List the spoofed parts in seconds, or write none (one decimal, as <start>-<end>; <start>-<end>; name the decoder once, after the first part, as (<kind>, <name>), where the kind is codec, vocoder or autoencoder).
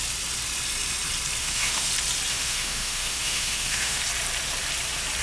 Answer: 1.4-1.9 (autoencoder, DAC-VAE); 2.3-4.0